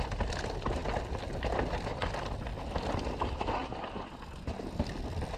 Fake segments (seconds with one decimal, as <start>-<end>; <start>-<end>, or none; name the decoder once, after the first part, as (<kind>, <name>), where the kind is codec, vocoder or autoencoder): none